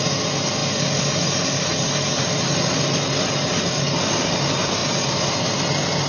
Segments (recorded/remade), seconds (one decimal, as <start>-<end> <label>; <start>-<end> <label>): 0.0-6.1 recorded